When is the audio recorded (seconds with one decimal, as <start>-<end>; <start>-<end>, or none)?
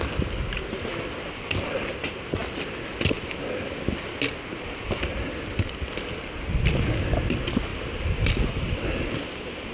0.0-9.7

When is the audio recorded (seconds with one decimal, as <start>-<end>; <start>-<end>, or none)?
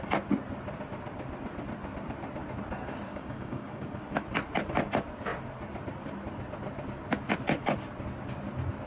0.0-3.1; 4.0-8.9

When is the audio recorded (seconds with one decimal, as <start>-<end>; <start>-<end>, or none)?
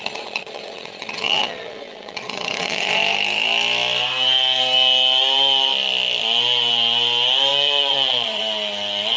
2.9-7.5; 8.4-9.2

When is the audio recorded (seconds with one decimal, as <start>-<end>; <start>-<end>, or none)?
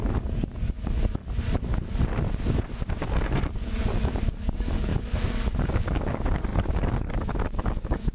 1.2-3.1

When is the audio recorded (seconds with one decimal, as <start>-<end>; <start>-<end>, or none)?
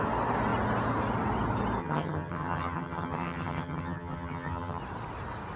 0.0-1.8; 4.8-5.6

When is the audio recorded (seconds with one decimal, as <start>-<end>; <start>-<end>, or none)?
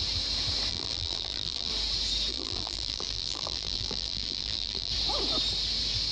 0.0-0.7; 1.7-2.3; 4.9-6.1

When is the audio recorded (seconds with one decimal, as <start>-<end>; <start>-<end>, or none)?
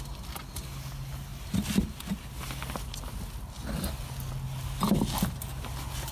0.0-6.1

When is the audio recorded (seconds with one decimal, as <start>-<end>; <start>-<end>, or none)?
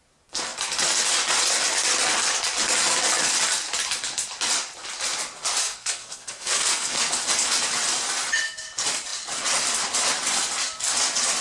0.0-5.6; 7.0-11.4